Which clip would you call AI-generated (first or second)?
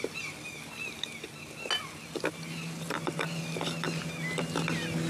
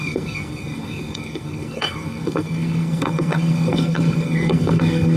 second